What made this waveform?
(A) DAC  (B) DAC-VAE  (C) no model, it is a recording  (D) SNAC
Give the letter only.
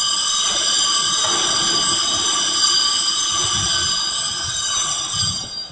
C